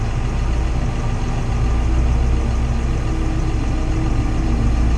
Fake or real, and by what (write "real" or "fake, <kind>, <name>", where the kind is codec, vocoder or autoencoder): real